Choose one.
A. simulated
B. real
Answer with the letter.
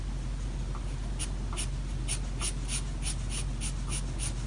B